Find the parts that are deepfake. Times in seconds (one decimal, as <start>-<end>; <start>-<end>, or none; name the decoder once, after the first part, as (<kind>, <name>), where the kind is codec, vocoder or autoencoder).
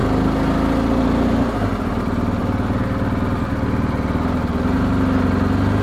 none